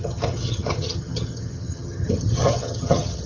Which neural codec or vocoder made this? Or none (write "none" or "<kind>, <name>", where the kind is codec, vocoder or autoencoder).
vocoder, HiFi-GAN